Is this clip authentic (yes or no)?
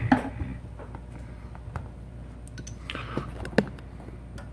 yes